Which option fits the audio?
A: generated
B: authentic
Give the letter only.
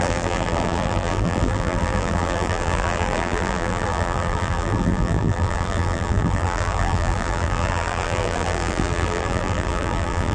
A